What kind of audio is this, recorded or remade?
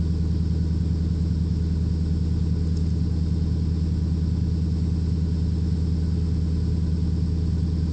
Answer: recorded